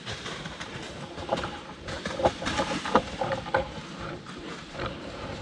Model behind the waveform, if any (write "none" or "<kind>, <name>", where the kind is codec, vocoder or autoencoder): vocoder, BigVGAN v2